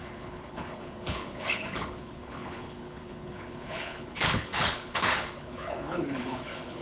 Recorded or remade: remade